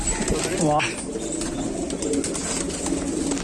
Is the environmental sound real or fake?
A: real